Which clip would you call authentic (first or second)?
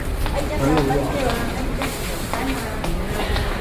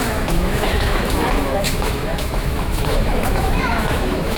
first